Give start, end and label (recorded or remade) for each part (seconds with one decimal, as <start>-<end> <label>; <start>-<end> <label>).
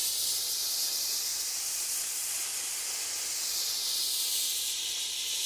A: 0.0-1.3 recorded; 1.3-2.4 remade; 2.4-5.5 recorded